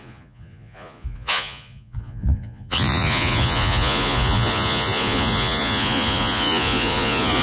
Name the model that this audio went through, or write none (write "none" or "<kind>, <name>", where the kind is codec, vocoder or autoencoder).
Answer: vocoder, Vocos